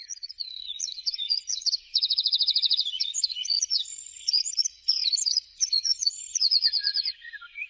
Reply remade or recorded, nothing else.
remade